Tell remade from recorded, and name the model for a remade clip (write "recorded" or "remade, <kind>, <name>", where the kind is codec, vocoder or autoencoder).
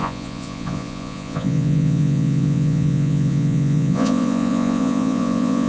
remade, vocoder, Vocos